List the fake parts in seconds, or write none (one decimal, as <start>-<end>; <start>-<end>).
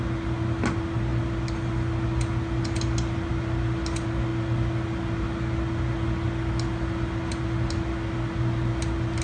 none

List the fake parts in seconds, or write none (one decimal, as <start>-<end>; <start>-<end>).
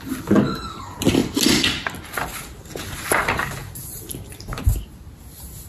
none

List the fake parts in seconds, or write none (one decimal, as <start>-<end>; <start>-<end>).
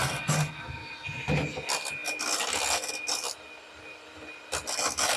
0.0-0.9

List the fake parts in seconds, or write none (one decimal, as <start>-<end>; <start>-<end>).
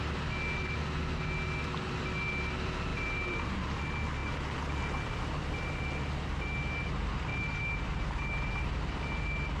2.9-3.6; 7.3-8.8